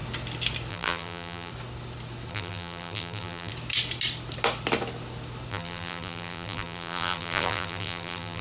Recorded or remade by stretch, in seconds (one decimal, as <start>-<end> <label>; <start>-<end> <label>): 0.0-0.7 recorded; 0.7-1.5 remade; 1.5-2.3 recorded; 2.3-3.5 remade; 3.5-5.5 recorded; 5.5-8.4 remade